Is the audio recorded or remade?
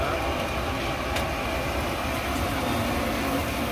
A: recorded